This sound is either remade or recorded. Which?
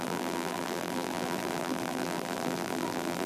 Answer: remade